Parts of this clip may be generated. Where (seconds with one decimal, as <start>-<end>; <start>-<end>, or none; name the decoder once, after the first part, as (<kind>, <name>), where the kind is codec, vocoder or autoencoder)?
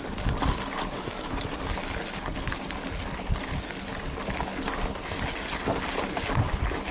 none